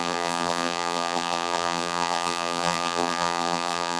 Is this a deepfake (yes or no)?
yes